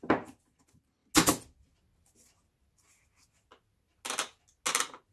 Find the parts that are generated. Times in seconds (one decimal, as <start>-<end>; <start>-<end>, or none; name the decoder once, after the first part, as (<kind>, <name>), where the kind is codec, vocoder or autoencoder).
none